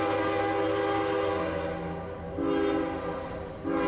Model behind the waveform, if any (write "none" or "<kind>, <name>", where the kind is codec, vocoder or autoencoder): none